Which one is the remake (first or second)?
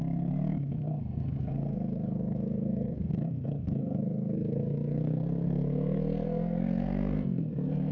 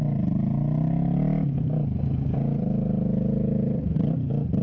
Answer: first